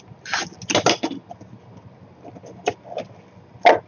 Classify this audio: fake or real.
real